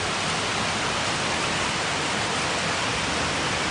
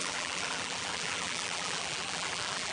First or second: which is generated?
second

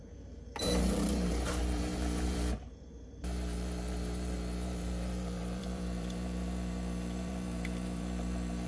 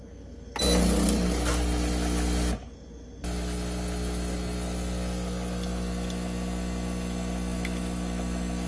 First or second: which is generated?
first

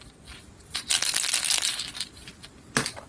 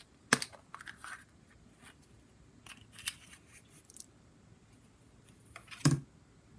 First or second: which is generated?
first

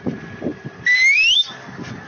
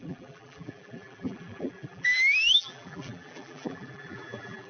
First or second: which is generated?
second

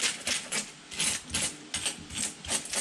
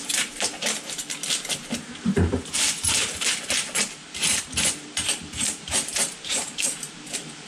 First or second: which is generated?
second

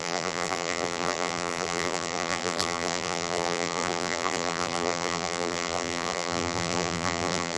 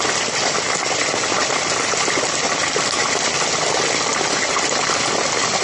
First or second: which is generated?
first